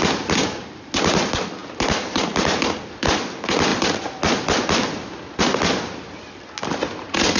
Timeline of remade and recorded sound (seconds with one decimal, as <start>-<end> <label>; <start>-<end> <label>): 0.0-7.4 recorded